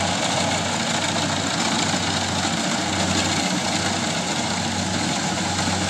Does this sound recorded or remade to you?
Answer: recorded